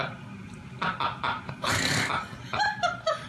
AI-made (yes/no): no